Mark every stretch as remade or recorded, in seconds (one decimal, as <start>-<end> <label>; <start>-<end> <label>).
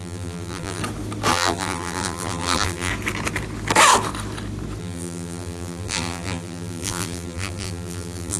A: 0.0-0.8 remade; 0.8-1.3 recorded; 1.3-2.9 remade; 2.9-4.8 recorded; 4.8-8.4 remade